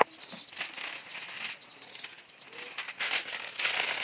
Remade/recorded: recorded